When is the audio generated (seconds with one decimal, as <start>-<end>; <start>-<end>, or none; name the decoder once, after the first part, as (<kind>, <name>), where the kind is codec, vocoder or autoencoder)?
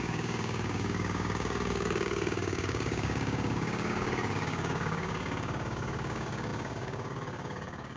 0.0-8.0 (codec, DAC)